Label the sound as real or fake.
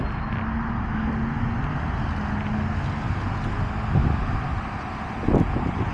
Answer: real